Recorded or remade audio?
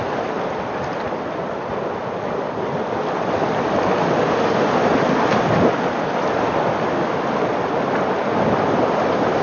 recorded